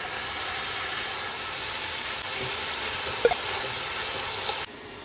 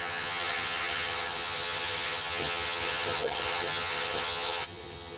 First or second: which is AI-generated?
second